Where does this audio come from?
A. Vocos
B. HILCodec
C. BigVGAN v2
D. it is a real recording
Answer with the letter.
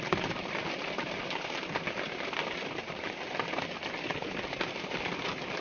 D